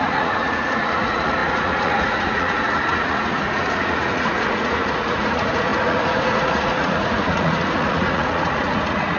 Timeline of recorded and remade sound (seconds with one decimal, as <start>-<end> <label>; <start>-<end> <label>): 0.0-9.2 remade